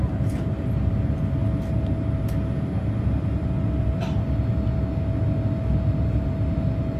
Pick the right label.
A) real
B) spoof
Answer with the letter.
A